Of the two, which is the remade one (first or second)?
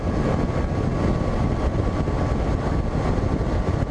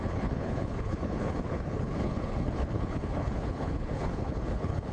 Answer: second